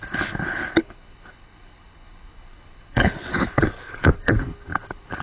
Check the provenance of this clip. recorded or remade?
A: remade